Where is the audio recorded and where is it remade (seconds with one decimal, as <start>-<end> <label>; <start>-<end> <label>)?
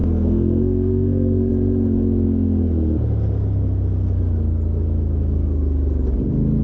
0.0-1.5 remade; 1.5-6.6 recorded